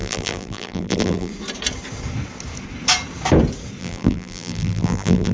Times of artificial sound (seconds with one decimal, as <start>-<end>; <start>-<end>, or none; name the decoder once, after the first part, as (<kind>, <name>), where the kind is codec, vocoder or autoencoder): 0.0-1.3 (vocoder, BigVGAN v2); 3.8-5.3